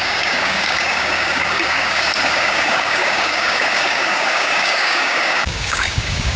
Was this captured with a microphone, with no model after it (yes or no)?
no